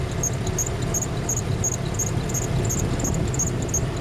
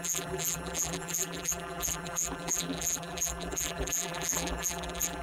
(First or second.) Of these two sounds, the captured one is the first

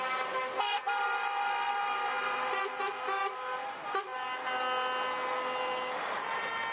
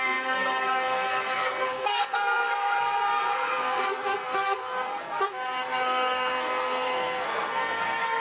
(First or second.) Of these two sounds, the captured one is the first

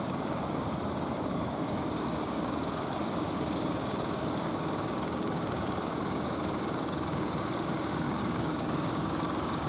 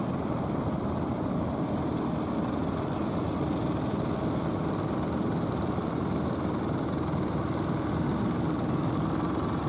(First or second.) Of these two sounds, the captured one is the second